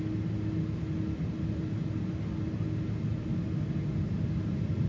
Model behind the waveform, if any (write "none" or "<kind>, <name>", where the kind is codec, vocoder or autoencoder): none